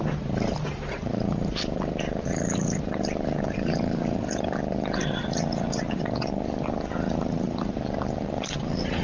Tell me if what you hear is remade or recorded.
recorded